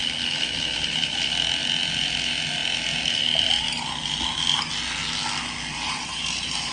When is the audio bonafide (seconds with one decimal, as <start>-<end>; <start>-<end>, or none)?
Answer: 0.0-5.7